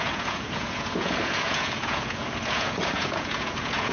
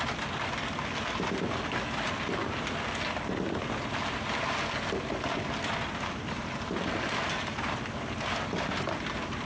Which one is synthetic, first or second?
first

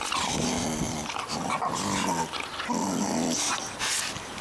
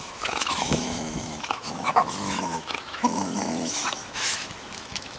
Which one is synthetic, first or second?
second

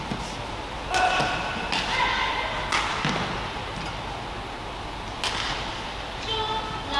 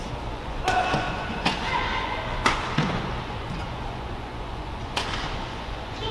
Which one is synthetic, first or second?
second